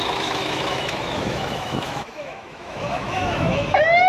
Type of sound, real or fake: fake